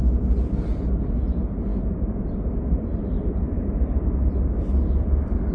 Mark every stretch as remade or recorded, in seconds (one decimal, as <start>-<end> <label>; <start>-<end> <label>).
0.0-5.5 recorded